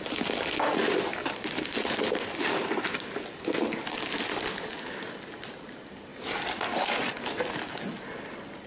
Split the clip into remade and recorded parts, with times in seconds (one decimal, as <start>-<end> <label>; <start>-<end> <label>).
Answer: 0.0-6.1 recorded; 6.1-7.1 remade; 7.1-8.7 recorded